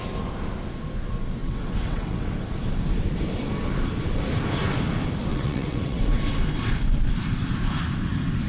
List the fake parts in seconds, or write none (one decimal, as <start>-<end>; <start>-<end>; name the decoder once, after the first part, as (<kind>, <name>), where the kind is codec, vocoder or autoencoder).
1.4-2.3 (vocoder, WaveNeXt); 5.3-6.0